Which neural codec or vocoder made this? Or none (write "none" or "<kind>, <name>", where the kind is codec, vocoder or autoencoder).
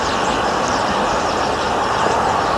none